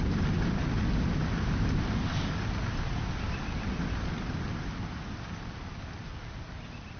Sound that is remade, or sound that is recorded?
recorded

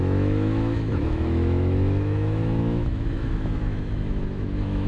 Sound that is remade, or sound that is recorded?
remade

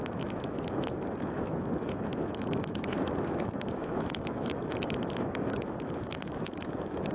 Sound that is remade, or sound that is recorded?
remade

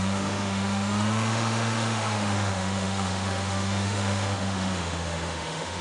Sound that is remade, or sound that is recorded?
remade